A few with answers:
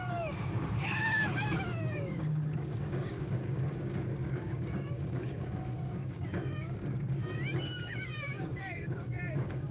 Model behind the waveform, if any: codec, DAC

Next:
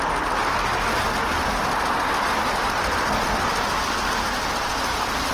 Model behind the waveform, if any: none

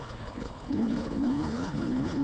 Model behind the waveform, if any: codec, HILCodec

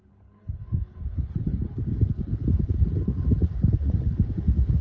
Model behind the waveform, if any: codec, HILCodec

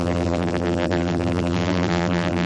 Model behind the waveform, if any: vocoder, BigVGAN v2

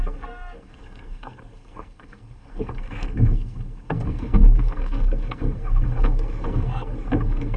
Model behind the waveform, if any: codec, SNAC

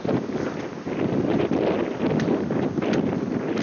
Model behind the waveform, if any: none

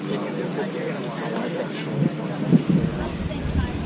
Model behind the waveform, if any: vocoder, BigVGAN v2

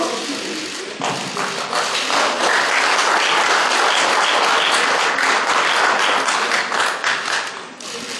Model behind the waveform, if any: none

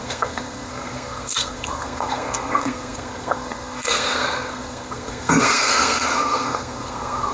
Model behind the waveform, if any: codec, SNAC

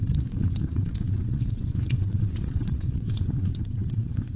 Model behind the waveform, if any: vocoder, WaveNeXt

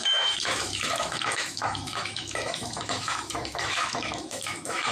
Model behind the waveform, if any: autoencoder, DAC-VAE